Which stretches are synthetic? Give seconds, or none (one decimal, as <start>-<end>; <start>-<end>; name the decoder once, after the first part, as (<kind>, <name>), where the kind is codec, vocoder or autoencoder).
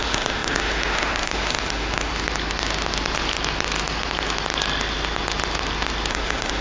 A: 0.0-2.1 (autoencoder, DAC-VAE); 6.1-6.6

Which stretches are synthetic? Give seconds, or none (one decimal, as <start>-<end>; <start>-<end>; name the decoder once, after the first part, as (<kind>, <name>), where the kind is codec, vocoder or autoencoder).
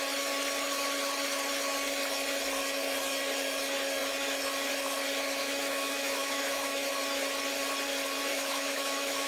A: 5.4-6.9 (autoencoder, DAC-VAE); 8.3-9.3